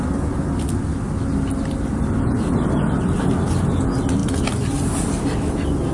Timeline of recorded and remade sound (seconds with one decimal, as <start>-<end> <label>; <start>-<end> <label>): 0.0-5.9 recorded